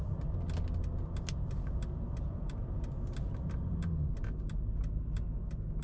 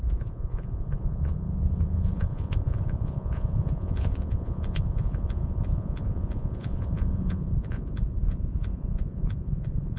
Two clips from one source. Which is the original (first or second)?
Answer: first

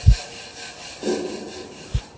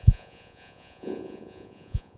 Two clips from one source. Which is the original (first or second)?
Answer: first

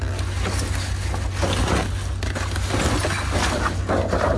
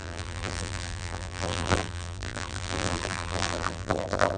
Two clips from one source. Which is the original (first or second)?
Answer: first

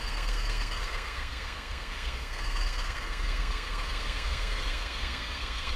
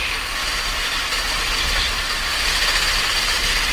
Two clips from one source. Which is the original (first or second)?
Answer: second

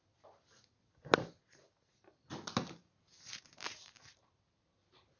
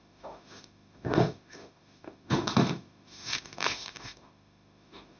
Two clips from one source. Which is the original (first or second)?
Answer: first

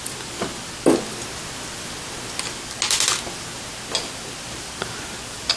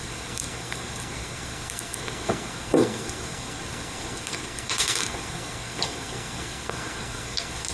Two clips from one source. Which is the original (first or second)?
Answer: first